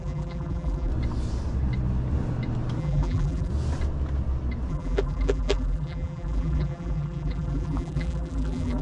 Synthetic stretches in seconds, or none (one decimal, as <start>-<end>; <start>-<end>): 0.0-0.9; 2.8-3.5; 4.7-8.8